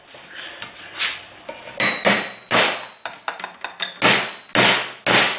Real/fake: real